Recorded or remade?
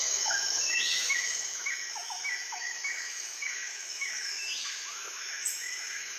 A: remade